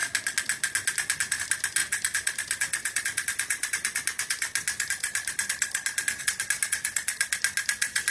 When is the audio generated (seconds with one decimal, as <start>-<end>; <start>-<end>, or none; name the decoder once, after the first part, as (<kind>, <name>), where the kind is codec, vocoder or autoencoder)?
none